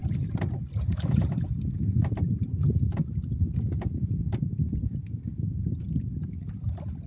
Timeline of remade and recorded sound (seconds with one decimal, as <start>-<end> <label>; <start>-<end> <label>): 0.0-7.1 recorded